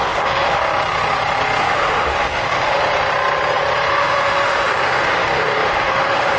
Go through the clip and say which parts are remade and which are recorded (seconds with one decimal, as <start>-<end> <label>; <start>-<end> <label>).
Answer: 0.0-0.6 remade; 0.6-1.6 recorded; 1.6-2.8 remade; 2.8-3.9 recorded; 3.9-6.4 remade